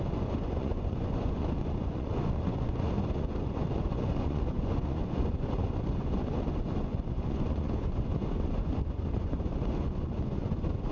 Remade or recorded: remade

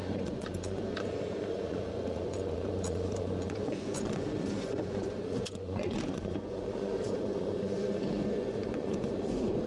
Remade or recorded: remade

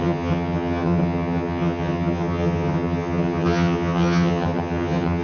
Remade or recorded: remade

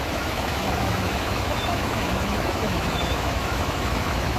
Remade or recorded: remade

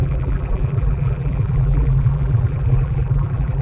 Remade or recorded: remade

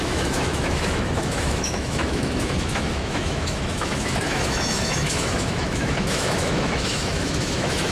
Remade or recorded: remade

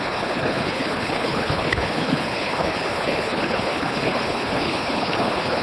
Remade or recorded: remade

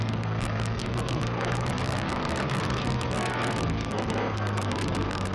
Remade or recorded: remade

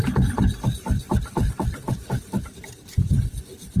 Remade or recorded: remade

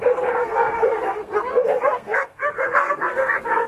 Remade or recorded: remade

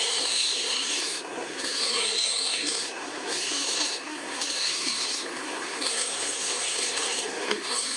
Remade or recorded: remade